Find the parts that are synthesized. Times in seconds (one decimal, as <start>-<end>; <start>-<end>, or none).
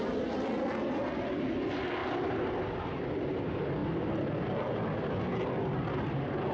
none